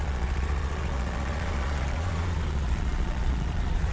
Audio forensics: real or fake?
fake